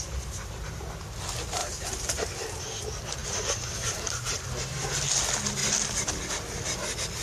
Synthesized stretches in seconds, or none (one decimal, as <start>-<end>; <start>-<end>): 1.6-2.3; 3.2-4.4